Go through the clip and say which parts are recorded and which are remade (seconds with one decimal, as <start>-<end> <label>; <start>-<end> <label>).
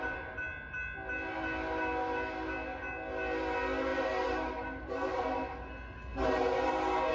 0.0-3.9 recorded; 3.9-5.2 remade; 5.2-7.1 recorded